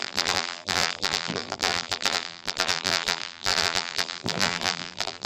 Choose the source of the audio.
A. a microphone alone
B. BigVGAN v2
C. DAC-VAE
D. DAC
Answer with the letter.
B